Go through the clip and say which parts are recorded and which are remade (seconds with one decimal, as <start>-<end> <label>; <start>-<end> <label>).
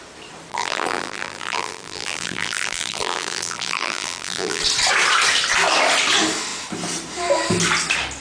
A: 0.0-0.5 recorded; 0.5-4.6 remade; 4.6-8.2 recorded